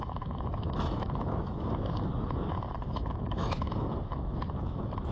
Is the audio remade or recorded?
remade